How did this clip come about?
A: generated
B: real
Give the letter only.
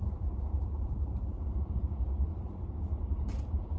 A